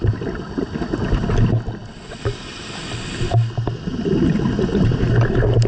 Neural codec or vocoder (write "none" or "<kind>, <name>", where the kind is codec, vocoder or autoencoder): none